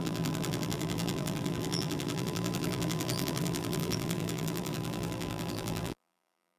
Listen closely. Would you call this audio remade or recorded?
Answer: remade